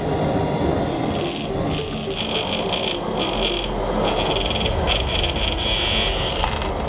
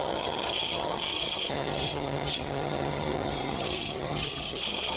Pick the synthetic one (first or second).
second